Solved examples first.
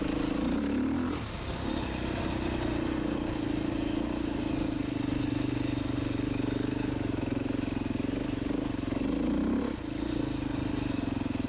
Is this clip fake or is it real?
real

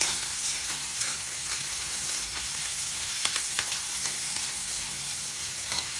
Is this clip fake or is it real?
fake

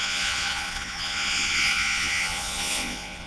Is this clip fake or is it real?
fake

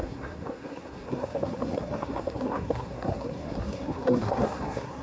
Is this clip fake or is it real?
fake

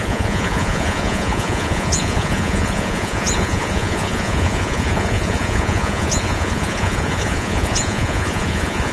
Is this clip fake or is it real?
fake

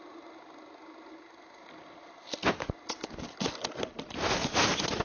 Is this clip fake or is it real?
real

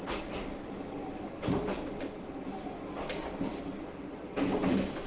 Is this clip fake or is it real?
real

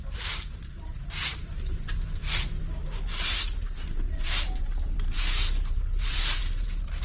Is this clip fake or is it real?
fake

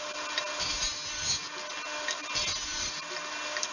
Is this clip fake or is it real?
real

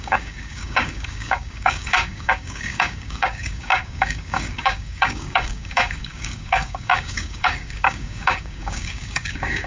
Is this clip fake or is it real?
fake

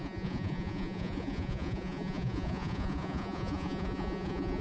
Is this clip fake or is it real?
fake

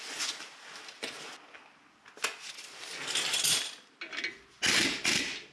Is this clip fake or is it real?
real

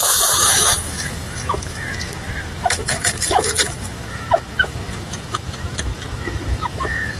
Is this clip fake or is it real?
fake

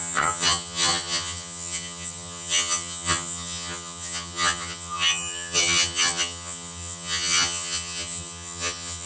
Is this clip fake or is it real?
fake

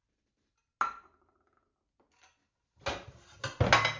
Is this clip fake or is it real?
real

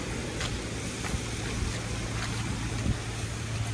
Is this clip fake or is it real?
real